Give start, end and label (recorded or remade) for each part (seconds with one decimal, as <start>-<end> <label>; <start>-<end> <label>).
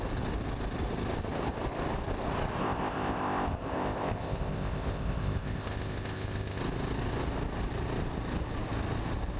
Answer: 0.0-2.6 recorded; 2.6-6.6 remade; 6.6-9.4 recorded